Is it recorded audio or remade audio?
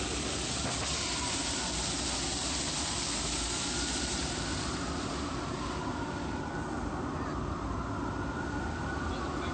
recorded